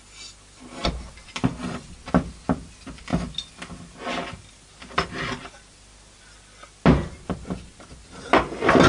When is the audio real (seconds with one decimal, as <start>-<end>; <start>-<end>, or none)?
0.0-8.9